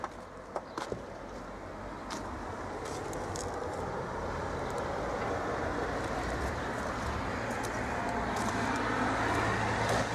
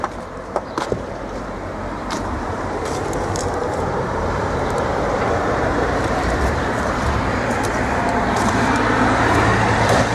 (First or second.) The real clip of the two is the first